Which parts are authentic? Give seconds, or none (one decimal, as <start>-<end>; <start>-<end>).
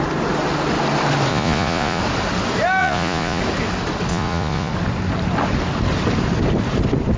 0.0-1.3; 2.0-2.8; 3.4-4.1; 4.7-7.2